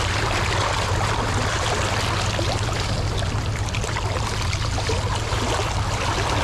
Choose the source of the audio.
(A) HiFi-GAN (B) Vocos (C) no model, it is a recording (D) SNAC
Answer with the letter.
C